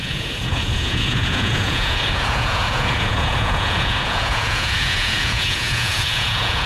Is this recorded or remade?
remade